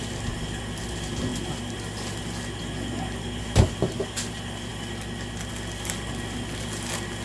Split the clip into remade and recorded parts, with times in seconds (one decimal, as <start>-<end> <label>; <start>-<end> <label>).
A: 0.0-7.2 recorded